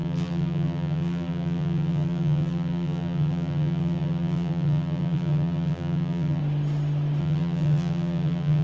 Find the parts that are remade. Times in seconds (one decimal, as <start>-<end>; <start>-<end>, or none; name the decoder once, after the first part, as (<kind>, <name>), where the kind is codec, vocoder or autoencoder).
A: 0.0-6.4 (vocoder, BigVGAN v2); 7.2-8.6